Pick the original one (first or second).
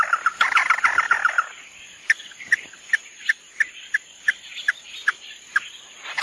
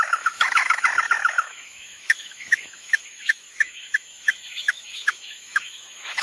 first